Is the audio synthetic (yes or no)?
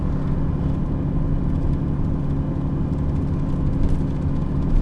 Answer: no